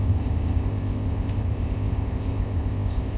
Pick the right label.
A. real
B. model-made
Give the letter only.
B